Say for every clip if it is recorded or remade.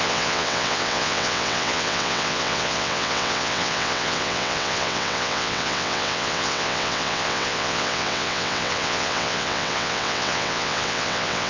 remade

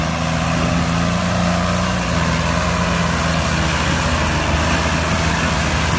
recorded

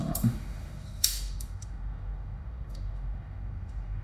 remade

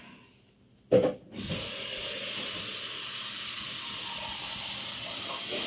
recorded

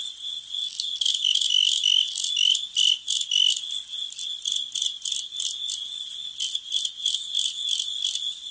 recorded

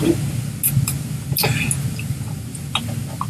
recorded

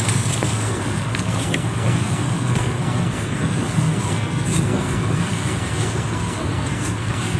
remade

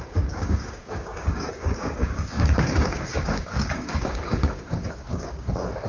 remade